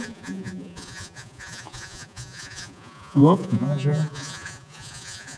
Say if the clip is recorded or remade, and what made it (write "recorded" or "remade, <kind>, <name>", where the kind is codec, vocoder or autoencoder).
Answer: remade, vocoder, Vocos